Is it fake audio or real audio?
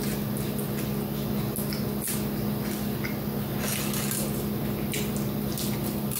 real